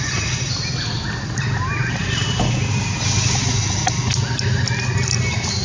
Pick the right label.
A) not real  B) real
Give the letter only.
B